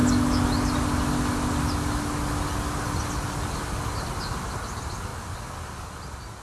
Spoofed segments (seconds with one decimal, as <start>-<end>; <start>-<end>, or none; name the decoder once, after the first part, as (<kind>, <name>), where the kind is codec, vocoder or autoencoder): none